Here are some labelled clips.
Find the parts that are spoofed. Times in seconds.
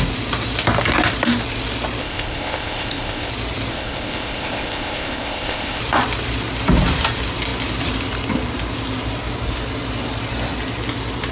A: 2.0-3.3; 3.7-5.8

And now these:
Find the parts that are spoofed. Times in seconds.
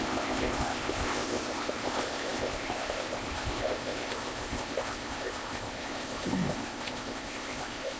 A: 0.0-8.0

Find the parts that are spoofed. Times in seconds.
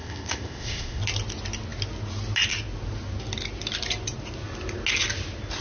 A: 0.0-1.0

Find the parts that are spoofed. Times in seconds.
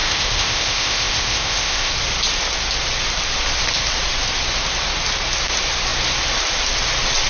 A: 0.0-1.9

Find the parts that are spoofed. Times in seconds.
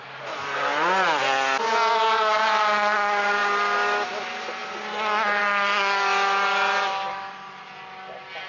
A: none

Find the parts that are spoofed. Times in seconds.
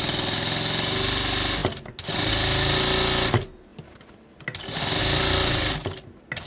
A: none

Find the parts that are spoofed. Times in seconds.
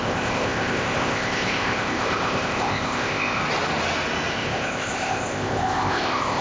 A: 0.0-3.4; 4.3-6.4